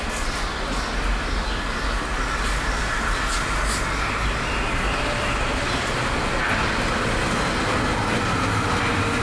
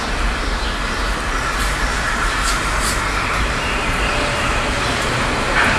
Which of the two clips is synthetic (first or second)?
second